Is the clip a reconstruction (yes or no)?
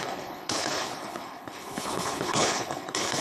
yes